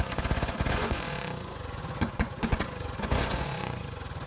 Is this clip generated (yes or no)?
yes